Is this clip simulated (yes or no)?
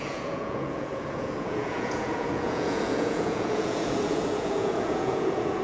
yes